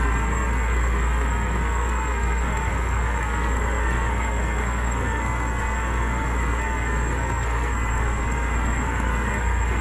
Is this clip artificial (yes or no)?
yes